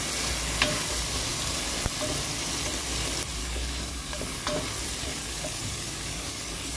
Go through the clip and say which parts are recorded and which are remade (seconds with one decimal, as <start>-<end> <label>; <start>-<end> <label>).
0.0-3.4 recorded; 3.4-4.4 remade; 4.4-5.2 recorded; 5.2-6.8 remade